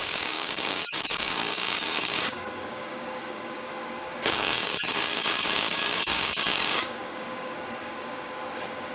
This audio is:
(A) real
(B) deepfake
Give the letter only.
B